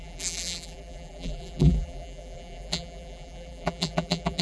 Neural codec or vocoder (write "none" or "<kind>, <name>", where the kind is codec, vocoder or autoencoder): vocoder, BigVGAN v2